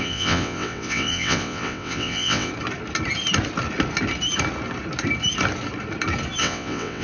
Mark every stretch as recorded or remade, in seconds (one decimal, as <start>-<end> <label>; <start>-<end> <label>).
0.0-2.5 remade; 2.5-6.4 recorded; 6.4-7.0 remade